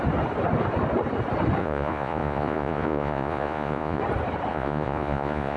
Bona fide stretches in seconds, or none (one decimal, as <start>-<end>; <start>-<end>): 0.0-1.6; 4.0-4.5